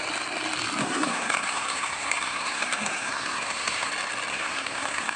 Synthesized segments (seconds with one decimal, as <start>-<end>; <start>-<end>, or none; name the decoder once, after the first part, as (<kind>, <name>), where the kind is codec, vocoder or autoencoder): 0.8-3.9 (codec, SNAC); 4.3-5.2